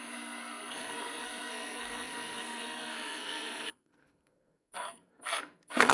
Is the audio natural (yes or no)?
no